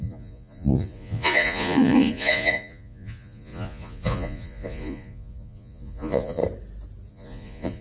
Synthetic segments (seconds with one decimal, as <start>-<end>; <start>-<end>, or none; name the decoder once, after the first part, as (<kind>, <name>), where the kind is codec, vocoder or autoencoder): 0.0-6.4 (vocoder, Vocos); 7.1-7.8